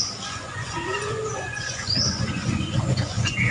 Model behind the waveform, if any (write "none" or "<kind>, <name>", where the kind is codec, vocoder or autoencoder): vocoder, Vocos